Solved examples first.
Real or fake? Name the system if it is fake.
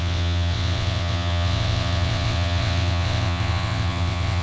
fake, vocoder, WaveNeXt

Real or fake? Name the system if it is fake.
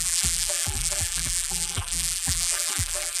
fake, vocoder, BigVGAN v2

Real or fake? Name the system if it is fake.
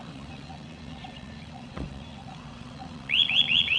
fake, vocoder, WaveNeXt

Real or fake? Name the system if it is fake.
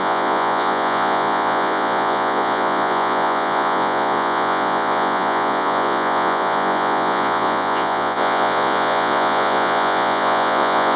fake, vocoder, Vocos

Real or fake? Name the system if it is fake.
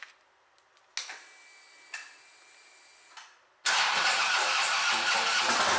real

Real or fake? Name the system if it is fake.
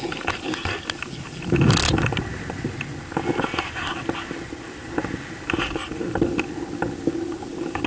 real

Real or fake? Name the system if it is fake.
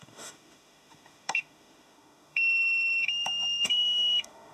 fake, autoencoder, DAC-VAE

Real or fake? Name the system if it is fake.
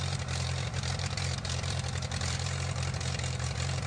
fake, vocoder, BigVGAN v2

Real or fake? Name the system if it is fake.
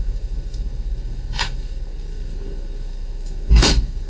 fake, codec, SNAC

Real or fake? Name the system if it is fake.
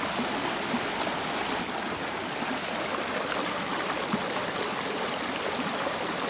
real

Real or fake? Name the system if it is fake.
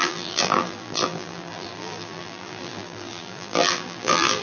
fake, vocoder, BigVGAN v2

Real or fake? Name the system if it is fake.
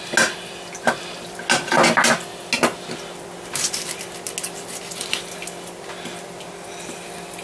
real